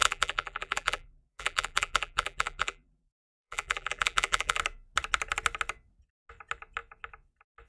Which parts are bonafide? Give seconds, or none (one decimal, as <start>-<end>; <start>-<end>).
4.6-7.7